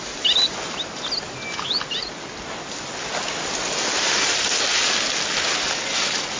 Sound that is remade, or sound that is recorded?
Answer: recorded